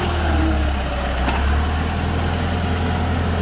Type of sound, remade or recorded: recorded